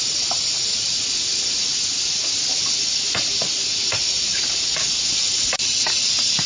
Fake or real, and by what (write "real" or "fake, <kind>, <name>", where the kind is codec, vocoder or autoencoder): real